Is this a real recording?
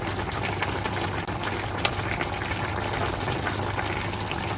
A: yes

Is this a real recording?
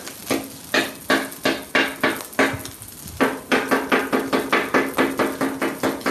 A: yes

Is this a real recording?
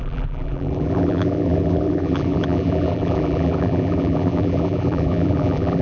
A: no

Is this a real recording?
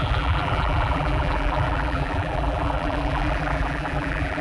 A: no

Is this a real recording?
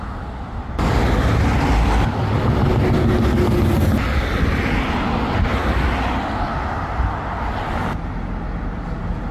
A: yes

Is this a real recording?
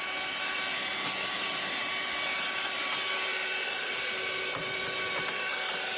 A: yes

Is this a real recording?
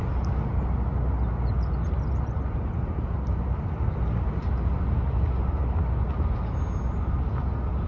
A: yes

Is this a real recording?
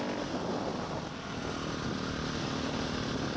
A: yes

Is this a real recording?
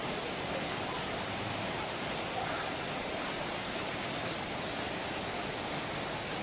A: yes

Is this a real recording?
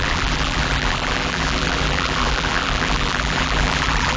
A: no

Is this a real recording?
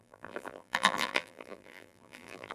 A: no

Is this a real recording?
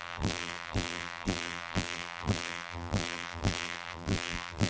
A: no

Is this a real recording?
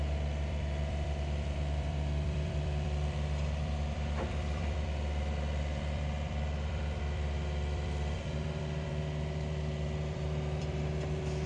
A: no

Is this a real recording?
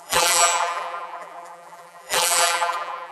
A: no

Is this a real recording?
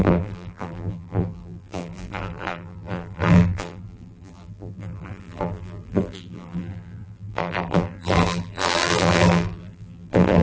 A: no